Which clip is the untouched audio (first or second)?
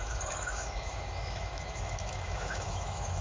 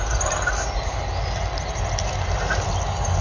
second